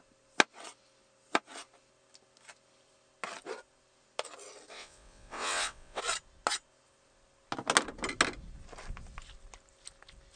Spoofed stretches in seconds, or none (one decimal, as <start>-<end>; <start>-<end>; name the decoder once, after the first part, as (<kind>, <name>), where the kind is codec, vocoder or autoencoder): 4.7-6.0 (vocoder, WaveNeXt)